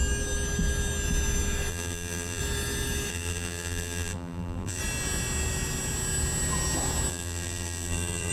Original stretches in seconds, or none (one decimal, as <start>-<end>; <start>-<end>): 0.0-1.7; 2.4-3.1; 4.8-7.1